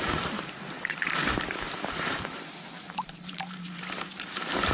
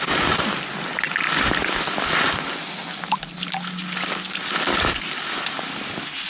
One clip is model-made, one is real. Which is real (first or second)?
second